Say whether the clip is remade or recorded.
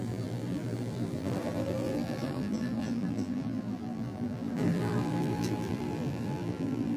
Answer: remade